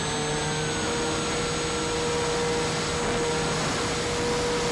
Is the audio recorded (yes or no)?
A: yes